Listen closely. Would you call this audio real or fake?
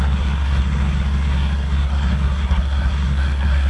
fake